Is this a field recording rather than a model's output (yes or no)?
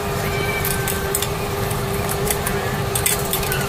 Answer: no